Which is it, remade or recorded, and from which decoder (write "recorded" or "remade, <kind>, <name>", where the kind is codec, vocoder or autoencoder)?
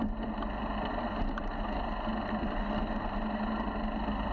recorded